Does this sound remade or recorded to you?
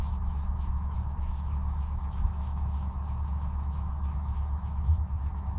remade